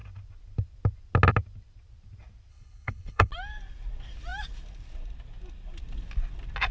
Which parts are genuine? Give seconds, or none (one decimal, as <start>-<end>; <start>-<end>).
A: 0.0-2.5; 3.3-6.7